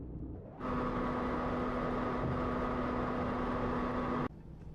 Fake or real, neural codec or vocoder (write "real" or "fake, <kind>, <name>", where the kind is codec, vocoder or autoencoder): real